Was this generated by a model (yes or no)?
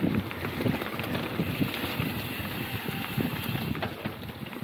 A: no